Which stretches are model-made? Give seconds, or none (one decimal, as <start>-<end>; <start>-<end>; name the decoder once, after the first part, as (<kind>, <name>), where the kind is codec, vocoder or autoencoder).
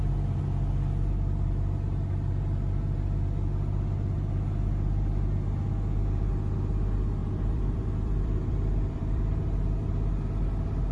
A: 7.2-9.4 (vocoder, BigVGAN v2)